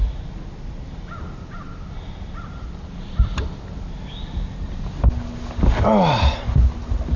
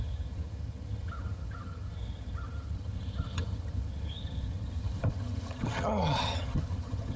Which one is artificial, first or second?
second